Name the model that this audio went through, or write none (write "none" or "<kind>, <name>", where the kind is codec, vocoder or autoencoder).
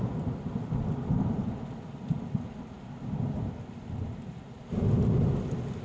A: none